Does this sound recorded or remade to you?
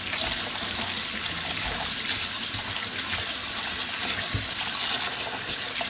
recorded